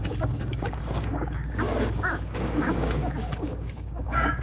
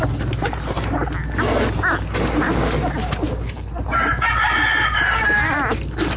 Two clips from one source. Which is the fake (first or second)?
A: first